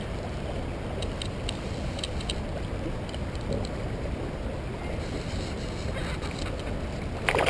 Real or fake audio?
real